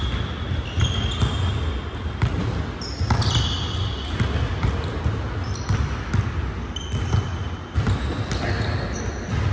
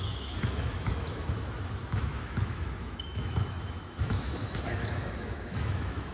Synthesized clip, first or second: second